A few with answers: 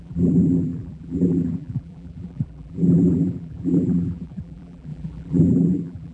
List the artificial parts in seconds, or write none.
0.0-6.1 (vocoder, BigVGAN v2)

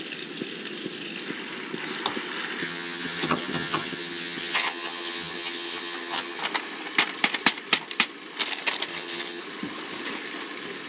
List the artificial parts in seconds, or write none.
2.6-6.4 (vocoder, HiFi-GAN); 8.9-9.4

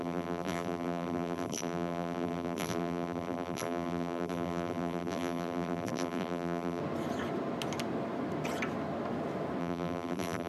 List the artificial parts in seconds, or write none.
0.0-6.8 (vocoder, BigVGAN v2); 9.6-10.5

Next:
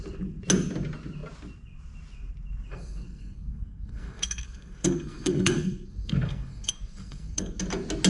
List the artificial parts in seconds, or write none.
2.7-7.6 (codec, SNAC)

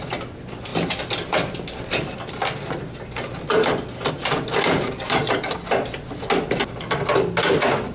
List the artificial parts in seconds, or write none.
none